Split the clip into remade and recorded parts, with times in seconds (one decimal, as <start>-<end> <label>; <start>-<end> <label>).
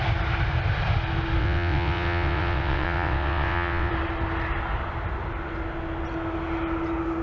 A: 0.0-1.4 recorded; 1.4-3.9 remade; 3.9-7.2 recorded